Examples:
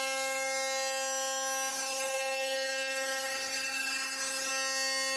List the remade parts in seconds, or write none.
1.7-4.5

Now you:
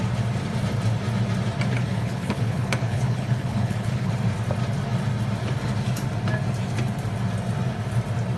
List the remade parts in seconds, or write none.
1.8-4.1

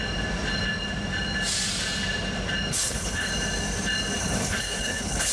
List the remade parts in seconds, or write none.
2.7-3.3; 4.2-5.3

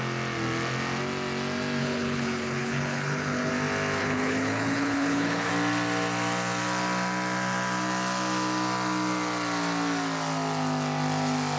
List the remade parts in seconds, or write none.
1.8-3.5; 4.0-5.5

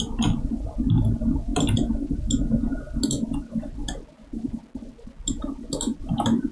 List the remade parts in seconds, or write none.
none

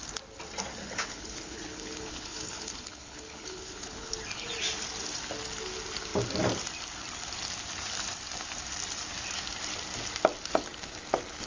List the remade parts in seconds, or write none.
0.8-4.1

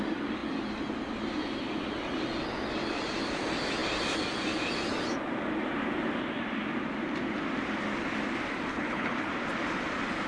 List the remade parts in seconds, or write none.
8.7-9.3